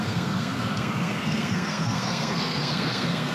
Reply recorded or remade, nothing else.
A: remade